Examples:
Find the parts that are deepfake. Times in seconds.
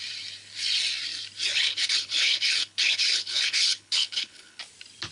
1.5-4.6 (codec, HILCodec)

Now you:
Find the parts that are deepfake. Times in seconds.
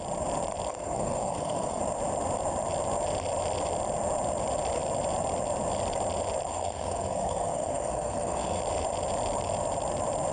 0.7-1.8 (codec, SNAC); 6.5-8.6